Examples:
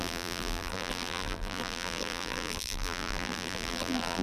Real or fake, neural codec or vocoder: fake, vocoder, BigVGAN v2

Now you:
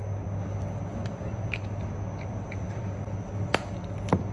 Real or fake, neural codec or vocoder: real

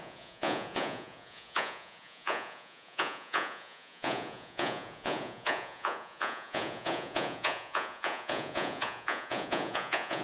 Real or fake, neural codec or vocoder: fake, vocoder, Vocos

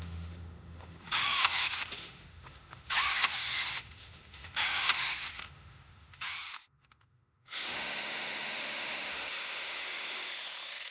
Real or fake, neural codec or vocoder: fake, autoencoder, DAC-VAE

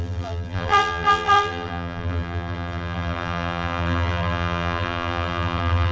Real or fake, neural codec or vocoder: fake, vocoder, BigVGAN v2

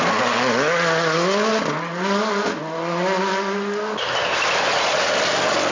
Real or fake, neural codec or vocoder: real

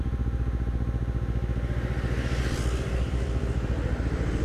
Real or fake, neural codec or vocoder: real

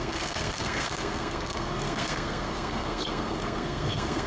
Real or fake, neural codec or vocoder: fake, codec, SNAC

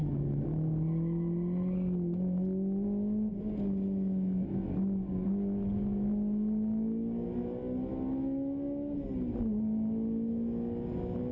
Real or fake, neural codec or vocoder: real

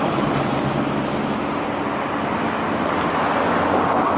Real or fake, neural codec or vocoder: real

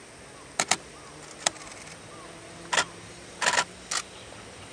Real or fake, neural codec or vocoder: real